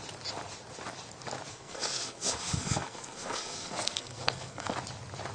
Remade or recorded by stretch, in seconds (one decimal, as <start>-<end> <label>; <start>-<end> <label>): 0.0-1.5 recorded; 1.5-4.7 remade; 4.7-5.3 recorded